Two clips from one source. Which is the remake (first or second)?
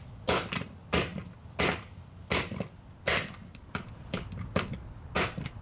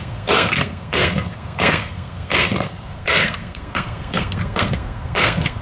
second